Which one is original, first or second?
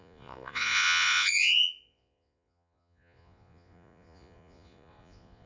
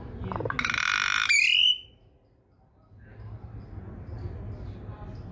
second